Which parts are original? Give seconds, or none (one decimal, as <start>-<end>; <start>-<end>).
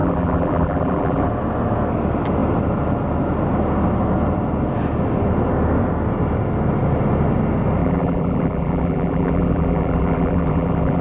1.2-7.8